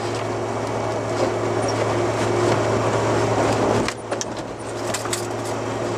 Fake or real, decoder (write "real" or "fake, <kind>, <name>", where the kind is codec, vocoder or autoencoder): real